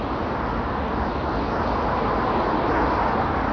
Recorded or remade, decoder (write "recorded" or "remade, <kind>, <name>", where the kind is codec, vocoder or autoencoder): recorded